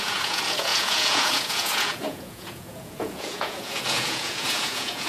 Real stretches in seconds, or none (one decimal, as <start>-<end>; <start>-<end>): none